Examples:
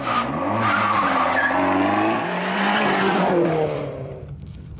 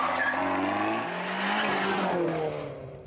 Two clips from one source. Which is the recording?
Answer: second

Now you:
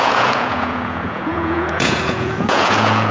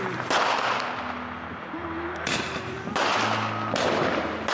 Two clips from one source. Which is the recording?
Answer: second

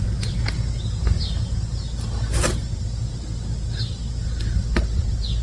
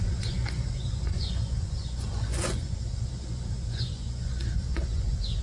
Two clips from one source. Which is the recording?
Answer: first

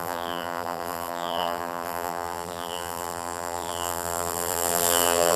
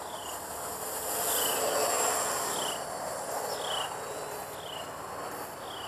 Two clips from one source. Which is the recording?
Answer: second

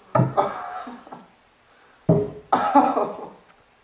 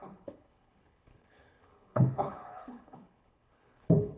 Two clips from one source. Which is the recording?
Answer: first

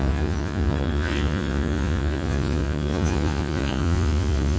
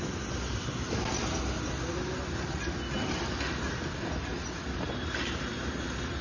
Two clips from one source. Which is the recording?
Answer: second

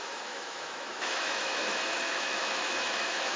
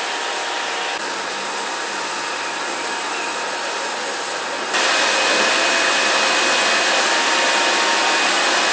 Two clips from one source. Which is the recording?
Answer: second